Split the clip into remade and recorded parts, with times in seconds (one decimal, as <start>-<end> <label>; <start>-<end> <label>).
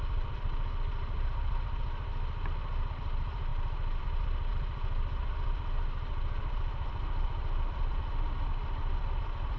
0.0-2.1 remade; 2.1-2.9 recorded; 2.9-3.5 remade; 3.5-4.0 recorded; 4.0-9.6 remade